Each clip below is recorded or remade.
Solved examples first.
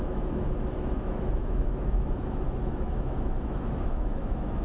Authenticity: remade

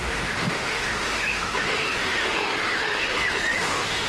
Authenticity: remade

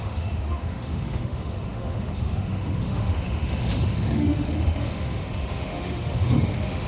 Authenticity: remade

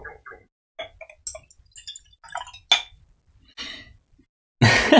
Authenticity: recorded